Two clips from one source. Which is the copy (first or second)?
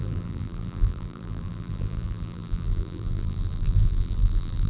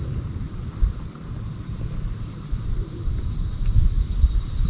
first